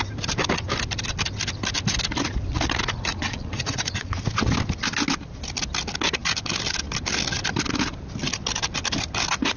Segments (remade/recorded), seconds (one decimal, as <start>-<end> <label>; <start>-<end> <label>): 0.0-3.1 recorded; 3.1-4.2 remade; 4.2-9.6 recorded